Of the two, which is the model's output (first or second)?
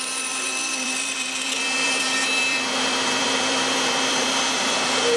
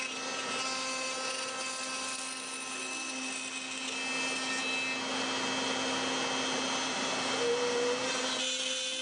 first